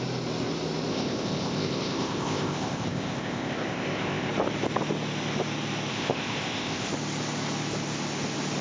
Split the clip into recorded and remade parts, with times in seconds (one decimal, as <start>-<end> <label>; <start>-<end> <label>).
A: 0.0-0.9 recorded; 0.9-4.3 remade; 4.3-5.9 recorded; 5.9-6.9 remade; 6.9-8.6 recorded